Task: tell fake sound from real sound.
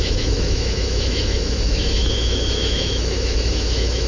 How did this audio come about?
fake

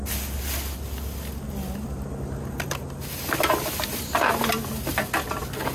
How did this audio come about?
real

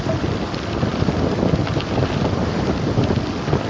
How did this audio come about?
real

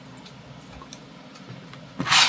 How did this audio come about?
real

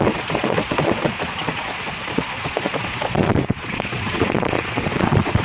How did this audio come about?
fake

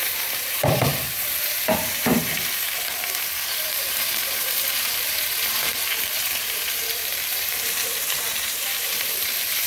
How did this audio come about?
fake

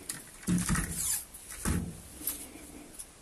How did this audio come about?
real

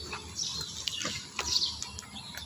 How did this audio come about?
real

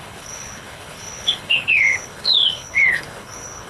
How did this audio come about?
fake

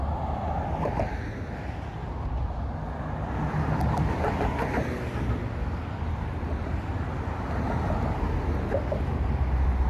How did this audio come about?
real